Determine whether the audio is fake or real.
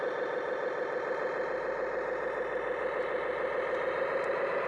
real